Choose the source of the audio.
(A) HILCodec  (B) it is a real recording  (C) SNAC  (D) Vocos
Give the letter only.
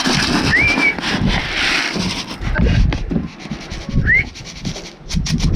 B